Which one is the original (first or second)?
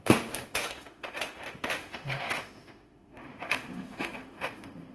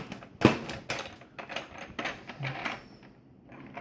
second